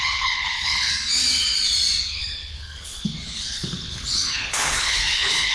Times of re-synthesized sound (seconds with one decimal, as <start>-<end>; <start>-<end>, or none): 0.0-0.9; 2.0-5.5

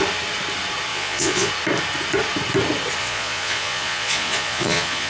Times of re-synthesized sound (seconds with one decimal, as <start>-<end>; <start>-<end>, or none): 0.9-1.5; 3.0-5.1